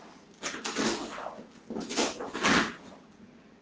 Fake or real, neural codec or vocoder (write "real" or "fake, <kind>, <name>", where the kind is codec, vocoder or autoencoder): real